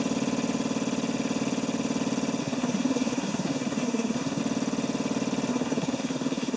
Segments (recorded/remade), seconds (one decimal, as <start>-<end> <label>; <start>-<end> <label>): 0.0-2.4 recorded; 2.4-4.4 remade; 4.4-5.5 recorded; 5.5-6.6 remade